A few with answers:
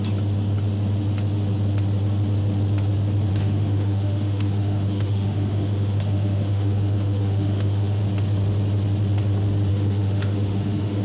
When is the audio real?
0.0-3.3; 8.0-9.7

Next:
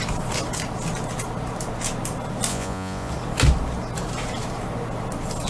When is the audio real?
0.0-2.5; 3.1-5.5

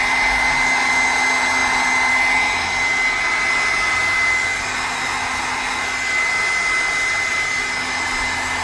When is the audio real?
0.0-8.6

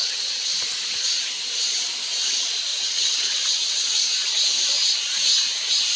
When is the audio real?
0.5-2.7; 4.0-6.0

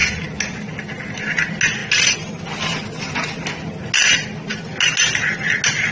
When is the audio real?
0.0-5.9

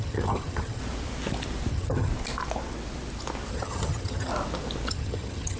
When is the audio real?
0.8-1.7; 2.1-3.5; 4.3-4.9

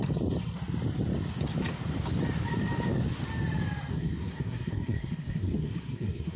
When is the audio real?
0.0-3.9